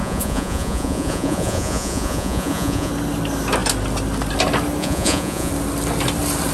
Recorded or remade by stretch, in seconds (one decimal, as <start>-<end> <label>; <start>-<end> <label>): 0.0-2.9 remade; 2.9-4.8 recorded; 4.8-5.5 remade; 5.5-6.5 recorded